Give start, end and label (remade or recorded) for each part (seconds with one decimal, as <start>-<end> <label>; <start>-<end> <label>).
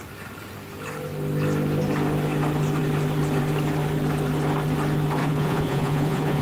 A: 0.0-5.2 recorded; 5.2-6.4 remade